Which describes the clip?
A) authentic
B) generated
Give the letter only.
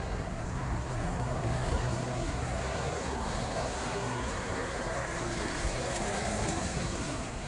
B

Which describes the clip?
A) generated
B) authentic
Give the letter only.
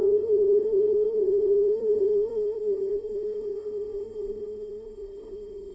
A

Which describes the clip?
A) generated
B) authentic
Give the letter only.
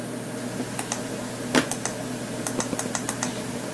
B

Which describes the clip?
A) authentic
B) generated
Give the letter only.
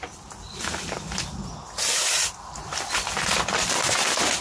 B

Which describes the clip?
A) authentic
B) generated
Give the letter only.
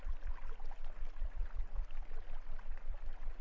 A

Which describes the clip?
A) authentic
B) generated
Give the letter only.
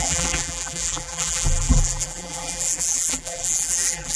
B